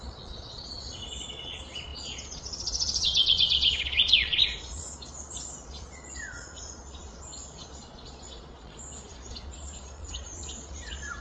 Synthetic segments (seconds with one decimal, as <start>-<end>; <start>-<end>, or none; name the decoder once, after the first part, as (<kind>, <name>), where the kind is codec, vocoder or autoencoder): 0.0-11.2 (vocoder, Vocos)